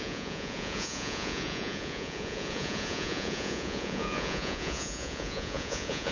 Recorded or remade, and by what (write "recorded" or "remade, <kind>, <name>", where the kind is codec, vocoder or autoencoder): remade, vocoder, Vocos